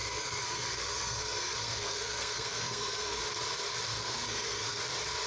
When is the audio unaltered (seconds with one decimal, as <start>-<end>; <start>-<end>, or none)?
3.2-3.9; 4.8-5.3